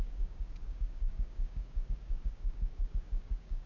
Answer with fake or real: fake